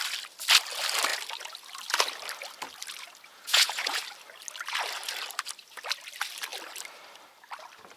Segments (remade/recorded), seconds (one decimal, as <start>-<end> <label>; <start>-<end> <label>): 0.0-3.3 recorded; 3.3-4.0 remade; 4.0-8.0 recorded